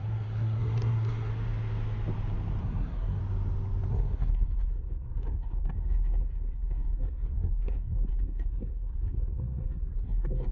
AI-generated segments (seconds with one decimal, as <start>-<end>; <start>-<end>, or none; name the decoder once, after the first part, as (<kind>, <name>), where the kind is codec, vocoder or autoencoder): 0.0-1.3 (codec, SNAC); 2.6-3.2; 3.9-10.5